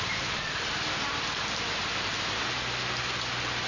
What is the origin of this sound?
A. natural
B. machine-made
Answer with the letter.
A